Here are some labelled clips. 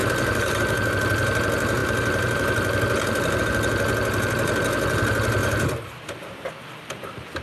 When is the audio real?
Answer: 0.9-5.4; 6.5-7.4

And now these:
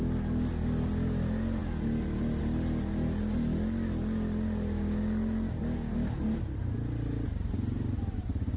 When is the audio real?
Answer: 0.0-8.6

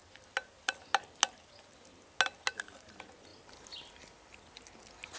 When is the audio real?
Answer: 0.0-5.2

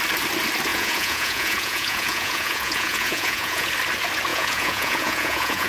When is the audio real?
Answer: 0.0-0.7; 3.7-4.3

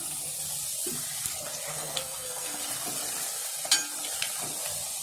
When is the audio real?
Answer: 0.0-1.7; 2.6-5.0